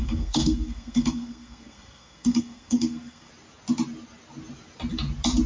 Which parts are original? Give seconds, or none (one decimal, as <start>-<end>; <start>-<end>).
3.3-5.5